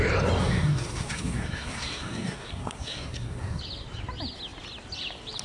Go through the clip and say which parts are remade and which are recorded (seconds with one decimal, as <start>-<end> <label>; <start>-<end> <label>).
0.0-0.4 recorded; 0.4-3.6 remade; 3.6-5.4 recorded